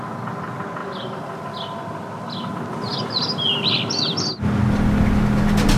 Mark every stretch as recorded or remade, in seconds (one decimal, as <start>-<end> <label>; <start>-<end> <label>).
0.0-0.8 recorded; 0.8-2.5 remade; 2.5-5.8 recorded